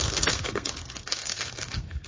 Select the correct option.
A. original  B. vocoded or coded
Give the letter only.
B